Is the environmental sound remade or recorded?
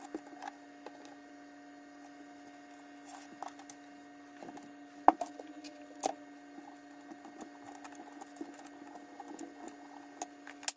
recorded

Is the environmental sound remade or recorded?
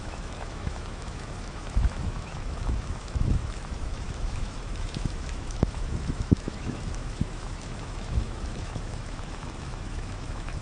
remade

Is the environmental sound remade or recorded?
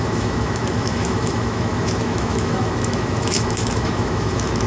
remade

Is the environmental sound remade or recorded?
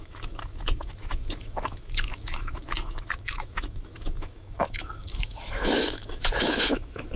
remade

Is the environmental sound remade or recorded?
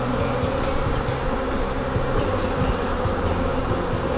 recorded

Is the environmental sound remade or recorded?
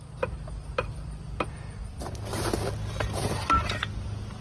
recorded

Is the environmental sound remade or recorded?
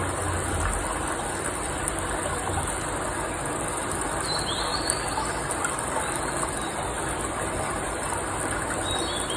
recorded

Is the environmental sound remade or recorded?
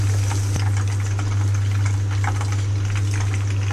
recorded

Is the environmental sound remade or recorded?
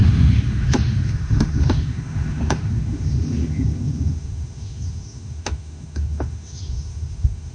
remade